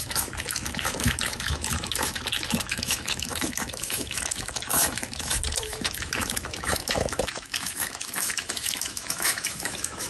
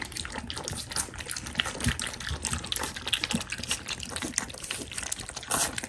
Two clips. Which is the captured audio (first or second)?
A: second